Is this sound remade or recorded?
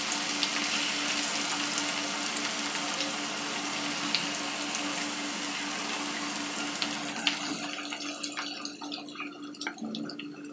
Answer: recorded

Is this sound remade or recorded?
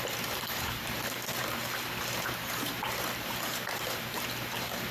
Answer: remade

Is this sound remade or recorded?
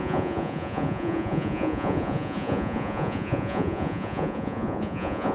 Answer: remade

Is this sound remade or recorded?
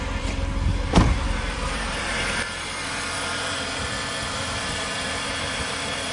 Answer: remade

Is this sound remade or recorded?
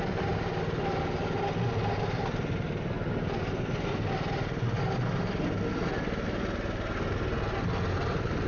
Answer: recorded